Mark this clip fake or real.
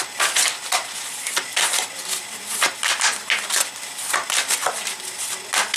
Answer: real